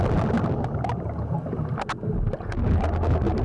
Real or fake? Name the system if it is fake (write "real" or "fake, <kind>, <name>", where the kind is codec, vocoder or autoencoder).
real